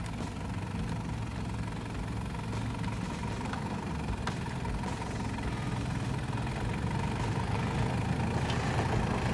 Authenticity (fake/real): real